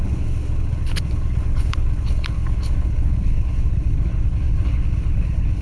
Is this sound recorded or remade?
remade